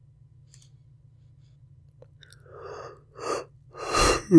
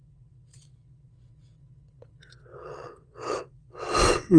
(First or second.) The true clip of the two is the first